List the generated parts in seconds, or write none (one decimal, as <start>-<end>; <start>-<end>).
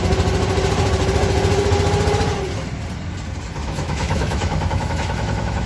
3.6-5.7